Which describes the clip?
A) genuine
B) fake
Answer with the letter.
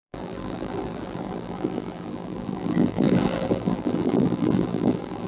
B